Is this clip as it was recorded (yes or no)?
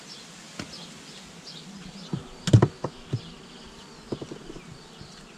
yes